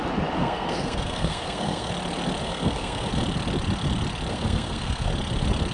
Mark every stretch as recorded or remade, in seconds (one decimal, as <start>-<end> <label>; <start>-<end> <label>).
0.0-0.4 recorded; 0.4-1.9 remade; 1.9-2.4 recorded; 2.4-3.1 remade; 3.1-4.3 recorded; 4.3-5.1 remade; 5.1-5.7 recorded